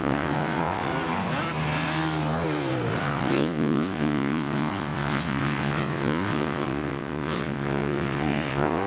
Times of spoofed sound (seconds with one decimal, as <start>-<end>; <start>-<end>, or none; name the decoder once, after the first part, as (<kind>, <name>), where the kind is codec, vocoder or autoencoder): 0.0-0.9 (vocoder, WaveNeXt); 3.0-8.9